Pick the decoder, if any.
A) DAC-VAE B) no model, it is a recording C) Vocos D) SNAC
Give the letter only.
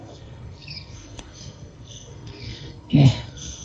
D